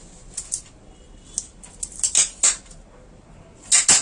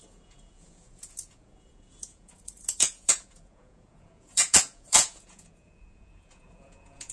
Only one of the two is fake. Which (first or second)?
second